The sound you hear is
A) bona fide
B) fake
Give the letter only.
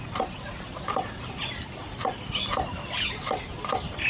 A